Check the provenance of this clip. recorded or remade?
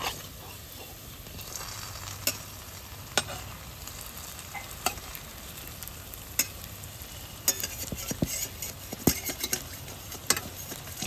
recorded